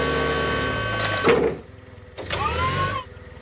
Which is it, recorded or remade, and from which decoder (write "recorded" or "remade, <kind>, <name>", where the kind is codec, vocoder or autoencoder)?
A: recorded